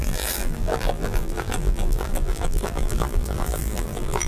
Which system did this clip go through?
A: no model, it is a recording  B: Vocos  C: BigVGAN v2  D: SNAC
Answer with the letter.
C